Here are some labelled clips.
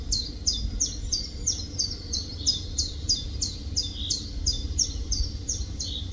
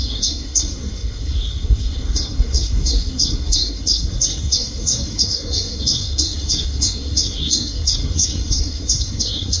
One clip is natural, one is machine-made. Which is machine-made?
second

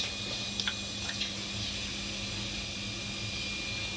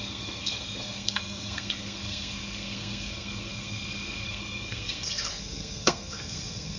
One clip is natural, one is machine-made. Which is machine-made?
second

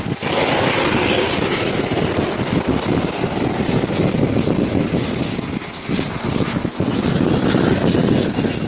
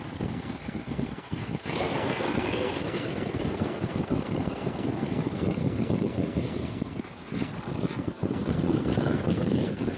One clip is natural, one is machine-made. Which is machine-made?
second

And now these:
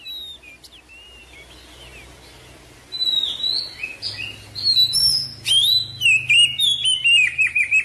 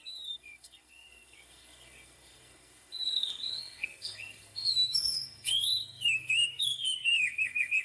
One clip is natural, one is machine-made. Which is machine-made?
second